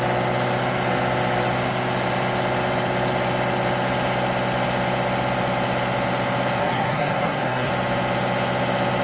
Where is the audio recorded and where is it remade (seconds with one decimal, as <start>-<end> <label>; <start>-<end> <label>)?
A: 0.0-6.6 recorded; 6.6-7.7 remade; 7.7-9.0 recorded

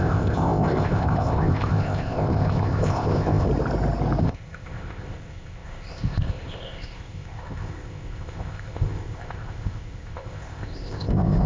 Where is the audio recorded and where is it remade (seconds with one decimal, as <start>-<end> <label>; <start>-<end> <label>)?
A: 0.0-3.5 remade; 3.5-4.2 recorded; 4.2-11.5 remade

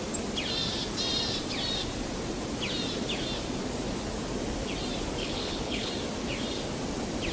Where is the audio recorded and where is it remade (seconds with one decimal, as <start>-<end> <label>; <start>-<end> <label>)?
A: 0.0-5.2 recorded; 5.2-5.9 remade; 5.9-7.3 recorded

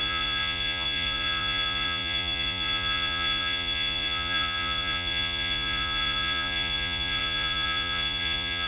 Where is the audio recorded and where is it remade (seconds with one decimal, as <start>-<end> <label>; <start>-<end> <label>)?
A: 0.0-8.7 remade